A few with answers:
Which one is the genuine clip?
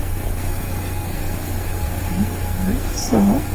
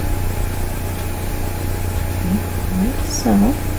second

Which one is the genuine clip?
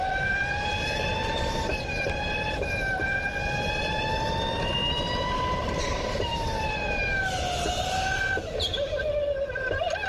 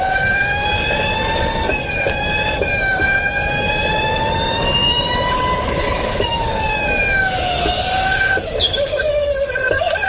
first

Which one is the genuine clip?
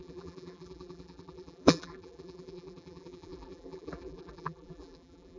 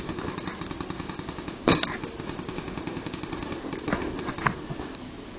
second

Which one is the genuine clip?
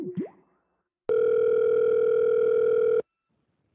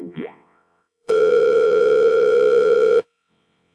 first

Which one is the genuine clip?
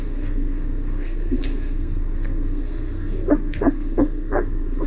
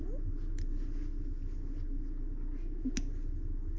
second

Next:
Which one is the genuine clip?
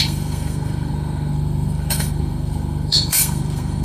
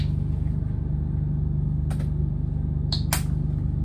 second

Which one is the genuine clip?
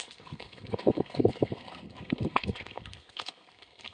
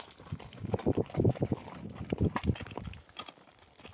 second